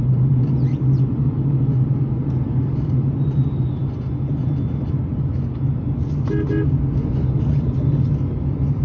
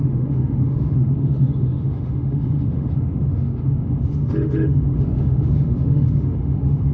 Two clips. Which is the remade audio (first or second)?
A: second